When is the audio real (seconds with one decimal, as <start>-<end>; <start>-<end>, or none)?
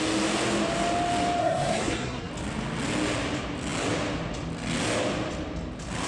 0.0-1.4; 2.3-6.1